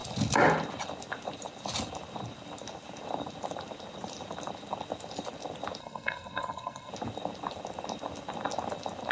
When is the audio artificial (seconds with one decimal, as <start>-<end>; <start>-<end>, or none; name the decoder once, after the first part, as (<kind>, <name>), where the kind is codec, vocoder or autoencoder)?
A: 5.8-6.9 (codec, SNAC)